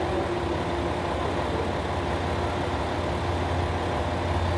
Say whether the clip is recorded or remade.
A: recorded